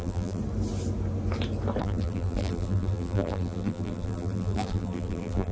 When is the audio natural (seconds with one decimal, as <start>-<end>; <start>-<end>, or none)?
0.4-1.8

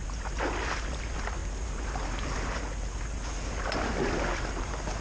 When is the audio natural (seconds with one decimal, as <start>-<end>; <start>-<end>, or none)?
0.0-5.0

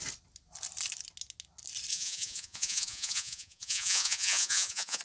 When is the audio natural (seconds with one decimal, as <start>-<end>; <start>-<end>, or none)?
0.0-1.9

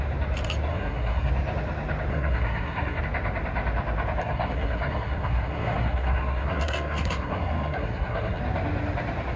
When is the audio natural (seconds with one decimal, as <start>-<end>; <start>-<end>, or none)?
0.0-0.7; 1.3-2.1; 3.0-4.2; 8.4-9.4

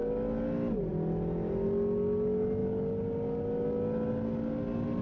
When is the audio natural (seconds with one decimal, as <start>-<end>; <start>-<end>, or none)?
0.0-5.0

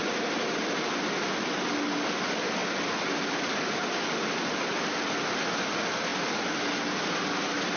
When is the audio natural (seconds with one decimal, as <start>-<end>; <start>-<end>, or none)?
0.0-7.8